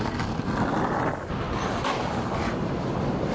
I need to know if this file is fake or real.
real